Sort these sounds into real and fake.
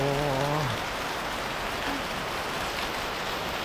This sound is real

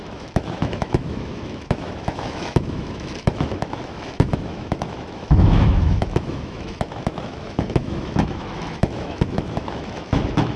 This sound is fake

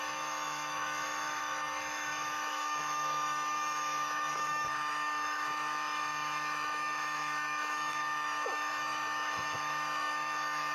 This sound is fake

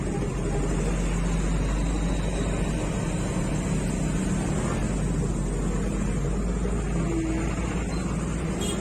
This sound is real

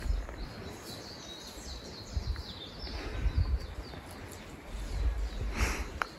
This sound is real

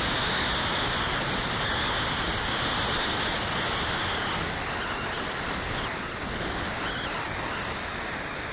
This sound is real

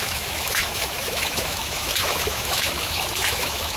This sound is fake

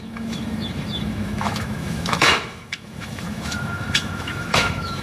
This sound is fake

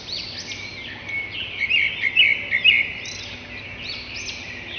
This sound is real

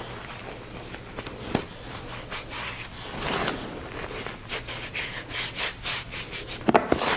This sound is real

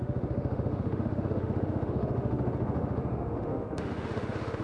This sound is fake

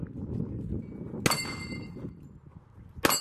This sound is real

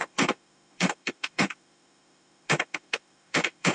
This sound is fake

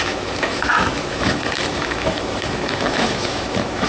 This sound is fake